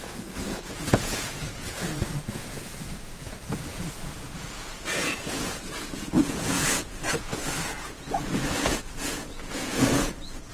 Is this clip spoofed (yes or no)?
yes